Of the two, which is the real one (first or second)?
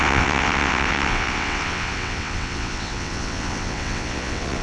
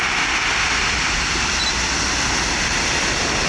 second